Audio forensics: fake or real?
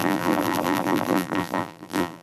fake